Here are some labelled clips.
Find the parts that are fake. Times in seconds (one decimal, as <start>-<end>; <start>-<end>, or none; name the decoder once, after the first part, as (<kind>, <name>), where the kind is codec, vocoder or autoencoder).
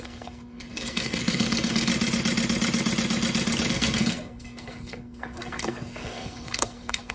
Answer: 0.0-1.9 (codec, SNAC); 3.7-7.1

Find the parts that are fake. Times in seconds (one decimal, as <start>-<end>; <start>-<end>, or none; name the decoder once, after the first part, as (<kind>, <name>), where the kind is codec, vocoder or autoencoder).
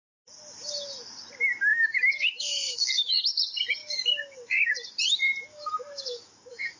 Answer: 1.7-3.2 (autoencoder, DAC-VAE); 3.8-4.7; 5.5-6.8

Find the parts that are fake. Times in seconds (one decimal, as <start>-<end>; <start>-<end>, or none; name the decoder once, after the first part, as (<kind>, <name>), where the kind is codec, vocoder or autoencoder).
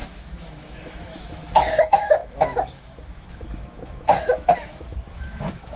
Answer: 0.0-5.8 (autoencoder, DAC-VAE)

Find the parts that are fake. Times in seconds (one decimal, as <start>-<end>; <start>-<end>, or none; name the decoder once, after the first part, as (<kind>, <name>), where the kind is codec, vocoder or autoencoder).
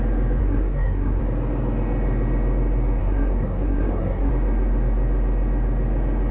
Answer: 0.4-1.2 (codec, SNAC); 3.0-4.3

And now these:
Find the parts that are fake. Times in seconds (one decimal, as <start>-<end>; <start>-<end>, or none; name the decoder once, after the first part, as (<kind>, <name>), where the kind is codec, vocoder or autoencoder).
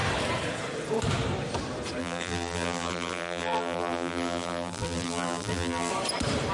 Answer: 2.0-5.9 (vocoder, BigVGAN v2)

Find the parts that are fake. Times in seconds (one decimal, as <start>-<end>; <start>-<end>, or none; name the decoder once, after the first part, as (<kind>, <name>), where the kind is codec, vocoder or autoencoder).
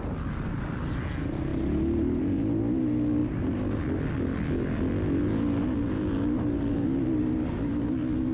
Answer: none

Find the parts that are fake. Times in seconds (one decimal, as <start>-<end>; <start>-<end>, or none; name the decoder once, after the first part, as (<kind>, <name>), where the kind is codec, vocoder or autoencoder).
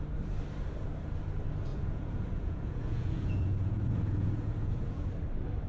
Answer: 1.7-5.1 (vocoder, Vocos)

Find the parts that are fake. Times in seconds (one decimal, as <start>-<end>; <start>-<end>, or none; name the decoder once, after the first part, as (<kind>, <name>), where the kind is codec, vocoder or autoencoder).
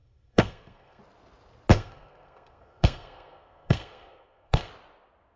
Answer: 0.0-1.0 (codec, SNAC); 1.7-4.7